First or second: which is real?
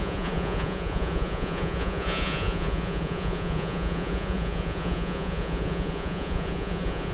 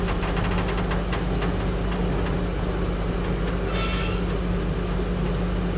second